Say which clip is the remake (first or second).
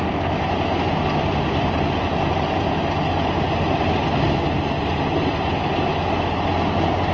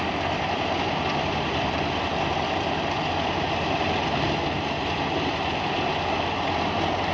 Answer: second